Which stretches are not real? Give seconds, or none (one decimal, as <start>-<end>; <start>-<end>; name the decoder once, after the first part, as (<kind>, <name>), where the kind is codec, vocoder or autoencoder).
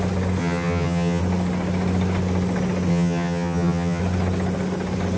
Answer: 0.4-1.2 (vocoder, HiFi-GAN); 2.9-4.0